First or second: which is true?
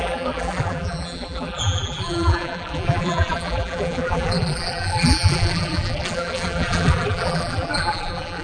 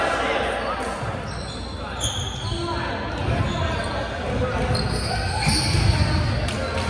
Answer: second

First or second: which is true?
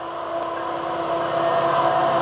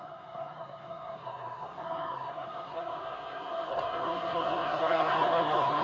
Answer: first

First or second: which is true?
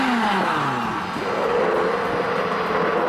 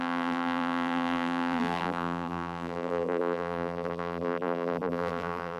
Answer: first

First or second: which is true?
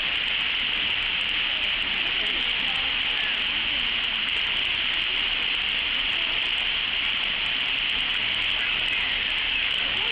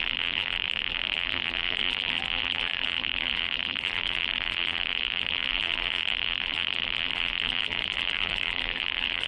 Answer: first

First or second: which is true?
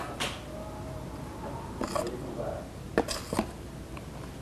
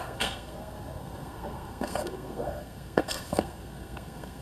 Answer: first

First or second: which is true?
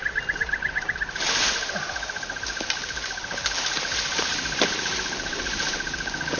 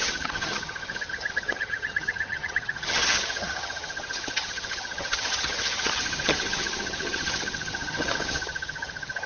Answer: first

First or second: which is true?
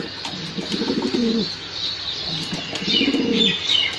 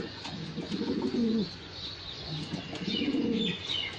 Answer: first